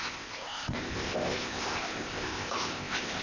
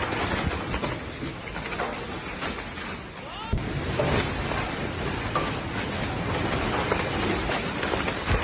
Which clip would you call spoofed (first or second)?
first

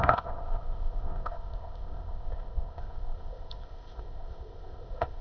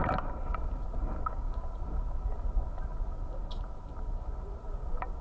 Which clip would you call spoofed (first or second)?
first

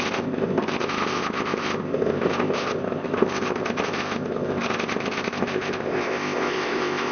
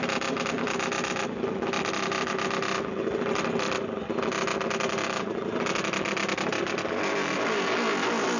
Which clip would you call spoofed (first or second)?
first